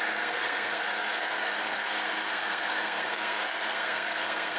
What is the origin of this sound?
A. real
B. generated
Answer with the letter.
B